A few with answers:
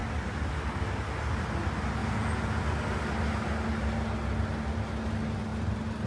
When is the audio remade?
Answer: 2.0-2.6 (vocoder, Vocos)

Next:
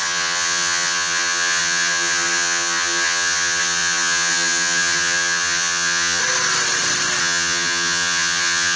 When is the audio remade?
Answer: 0.0-6.2 (vocoder, HiFi-GAN); 7.2-8.8

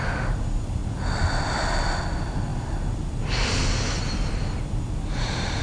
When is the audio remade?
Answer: none

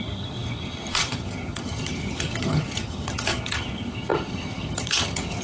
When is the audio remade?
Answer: 0.0-5.4 (vocoder, HiFi-GAN)

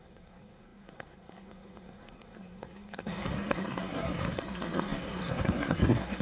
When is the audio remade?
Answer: 0.0-6.2 (codec, SNAC)

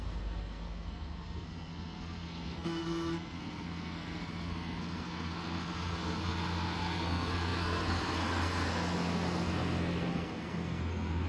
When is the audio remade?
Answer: 0.0-11.3 (codec, SNAC)